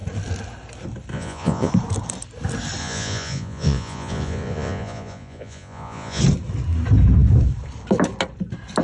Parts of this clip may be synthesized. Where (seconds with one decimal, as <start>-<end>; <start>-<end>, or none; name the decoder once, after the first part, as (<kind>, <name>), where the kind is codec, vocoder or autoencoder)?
1.1-1.7 (vocoder, Vocos); 2.8-6.2